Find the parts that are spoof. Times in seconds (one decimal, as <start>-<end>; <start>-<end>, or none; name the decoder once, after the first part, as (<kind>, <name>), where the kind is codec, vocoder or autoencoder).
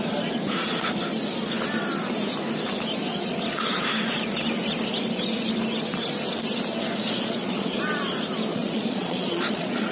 7.0-7.8 (vocoder, Vocos); 8.5-9.9